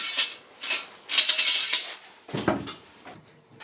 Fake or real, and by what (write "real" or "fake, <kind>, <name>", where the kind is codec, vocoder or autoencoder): real